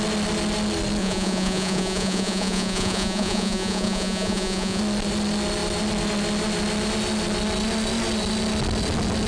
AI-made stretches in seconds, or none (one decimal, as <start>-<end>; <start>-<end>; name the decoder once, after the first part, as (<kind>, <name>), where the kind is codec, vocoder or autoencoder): 1.0-4.8 (vocoder, Vocos)